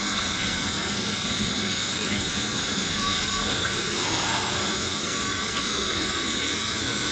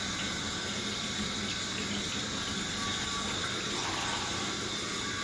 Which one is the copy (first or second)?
first